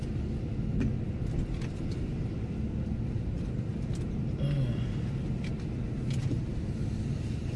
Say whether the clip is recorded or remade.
recorded